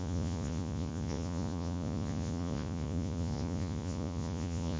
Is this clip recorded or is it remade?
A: remade